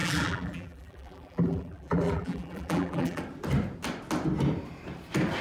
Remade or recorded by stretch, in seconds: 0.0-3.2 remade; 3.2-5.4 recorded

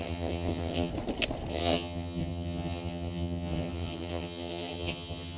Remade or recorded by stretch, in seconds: 0.0-0.9 remade; 0.9-1.5 recorded; 1.5-5.4 remade

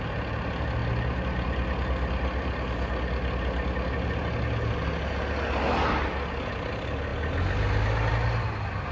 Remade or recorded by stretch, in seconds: 0.0-8.9 recorded

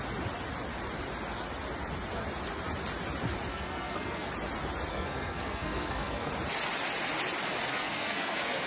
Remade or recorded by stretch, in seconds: 0.0-3.5 recorded; 3.5-4.3 remade; 4.3-4.9 recorded; 4.9-6.3 remade; 6.3-7.7 recorded; 7.7-8.7 remade